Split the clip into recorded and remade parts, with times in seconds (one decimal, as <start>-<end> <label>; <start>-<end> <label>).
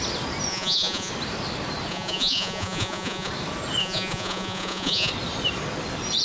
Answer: 0.0-0.5 recorded; 0.5-1.1 remade; 1.1-1.9 recorded; 1.9-3.3 remade; 3.3-3.8 recorded; 3.8-5.1 remade; 5.1-6.2 recorded